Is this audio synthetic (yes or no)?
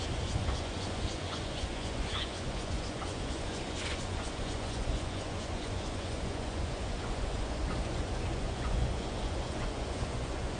yes